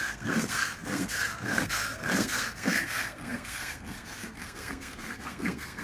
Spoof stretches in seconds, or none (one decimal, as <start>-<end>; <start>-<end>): 0.0-5.8